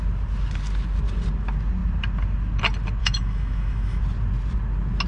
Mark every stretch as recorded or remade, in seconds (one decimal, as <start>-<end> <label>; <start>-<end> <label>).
0.0-3.0 recorded; 3.0-4.0 remade; 4.0-5.1 recorded